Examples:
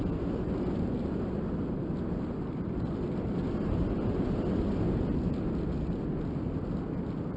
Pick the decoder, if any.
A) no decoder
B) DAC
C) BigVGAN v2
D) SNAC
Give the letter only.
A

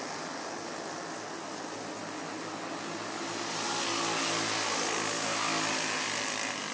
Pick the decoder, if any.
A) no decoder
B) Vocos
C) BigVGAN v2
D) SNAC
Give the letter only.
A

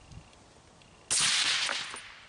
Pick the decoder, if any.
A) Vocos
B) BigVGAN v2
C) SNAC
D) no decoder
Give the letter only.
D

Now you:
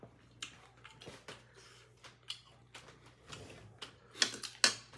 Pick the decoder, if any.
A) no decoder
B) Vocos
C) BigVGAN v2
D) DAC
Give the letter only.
A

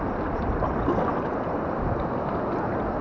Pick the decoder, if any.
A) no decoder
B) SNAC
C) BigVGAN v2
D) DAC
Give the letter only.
A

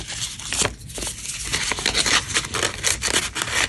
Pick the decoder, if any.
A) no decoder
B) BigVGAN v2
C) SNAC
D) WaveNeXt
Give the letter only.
A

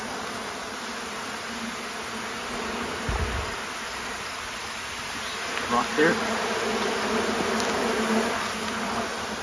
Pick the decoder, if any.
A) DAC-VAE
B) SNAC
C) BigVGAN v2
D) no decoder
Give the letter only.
D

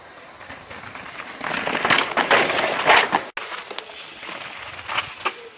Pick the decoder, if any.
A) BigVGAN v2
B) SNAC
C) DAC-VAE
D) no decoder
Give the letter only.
D